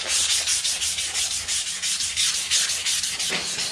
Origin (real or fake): real